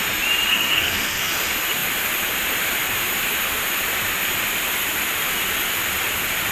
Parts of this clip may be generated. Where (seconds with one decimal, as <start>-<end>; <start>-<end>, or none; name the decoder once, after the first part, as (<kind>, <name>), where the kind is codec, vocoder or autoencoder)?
0.5-1.3 (codec, SNAC)